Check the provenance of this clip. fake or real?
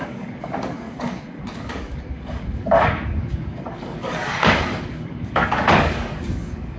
fake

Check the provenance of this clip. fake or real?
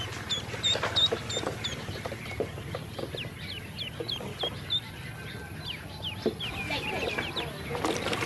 real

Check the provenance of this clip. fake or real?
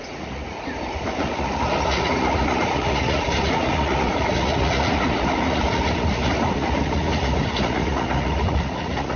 fake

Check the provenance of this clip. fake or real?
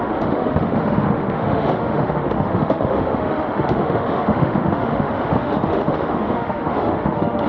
fake